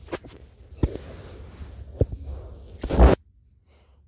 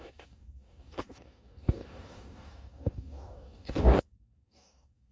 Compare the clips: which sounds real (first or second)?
first